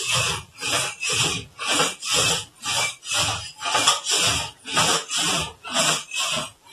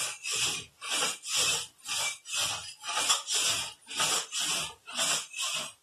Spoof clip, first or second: first